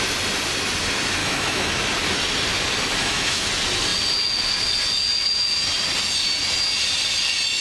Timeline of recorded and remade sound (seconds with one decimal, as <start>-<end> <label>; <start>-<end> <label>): 0.0-1.2 recorded; 1.2-1.7 remade; 1.7-3.0 recorded; 3.0-3.5 remade; 3.5-7.6 recorded

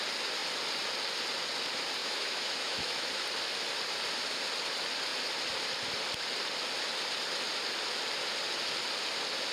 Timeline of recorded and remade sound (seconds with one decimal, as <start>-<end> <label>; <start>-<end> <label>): 0.0-2.0 recorded; 2.0-3.1 remade; 3.1-9.5 recorded

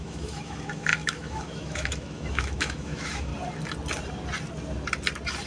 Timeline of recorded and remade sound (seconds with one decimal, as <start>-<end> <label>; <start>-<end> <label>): 0.0-3.3 remade; 3.3-5.5 recorded

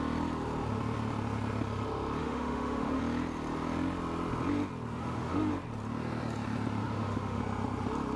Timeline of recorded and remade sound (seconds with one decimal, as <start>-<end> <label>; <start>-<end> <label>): 0.0-2.2 recorded; 2.2-3.0 remade; 3.0-4.9 recorded; 4.9-5.5 remade; 5.5-6.8 recorded; 6.8-7.4 remade; 7.4-8.2 recorded